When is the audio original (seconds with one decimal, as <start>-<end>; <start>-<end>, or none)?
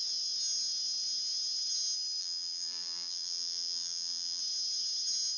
0.0-2.2; 4.4-5.4